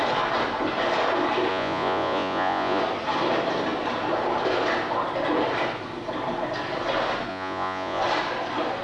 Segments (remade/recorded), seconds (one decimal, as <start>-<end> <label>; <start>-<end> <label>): 0.0-1.5 recorded; 1.5-2.8 remade; 2.8-7.3 recorded; 7.3-8.0 remade; 8.0-8.8 recorded